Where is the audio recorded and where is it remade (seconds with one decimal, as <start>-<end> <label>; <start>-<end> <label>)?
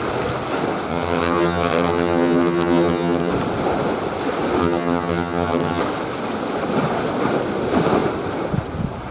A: 0.0-0.9 recorded; 0.9-3.3 remade; 3.3-4.6 recorded; 4.6-5.8 remade; 5.8-9.1 recorded